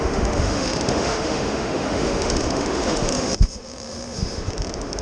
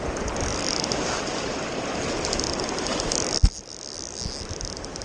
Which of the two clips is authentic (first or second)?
second